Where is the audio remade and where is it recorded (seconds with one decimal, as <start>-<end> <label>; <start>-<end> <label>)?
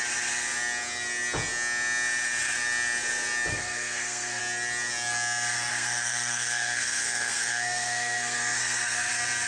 0.0-3.5 recorded; 3.5-4.4 remade; 4.4-5.7 recorded; 5.7-9.1 remade; 9.1-9.5 recorded